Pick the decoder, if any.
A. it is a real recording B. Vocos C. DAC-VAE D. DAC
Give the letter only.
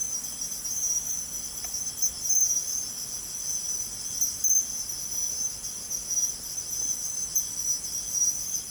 A